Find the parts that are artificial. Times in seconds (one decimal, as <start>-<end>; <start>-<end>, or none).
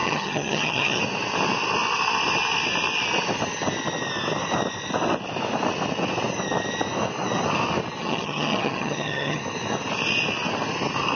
0.0-1.0; 8.0-9.4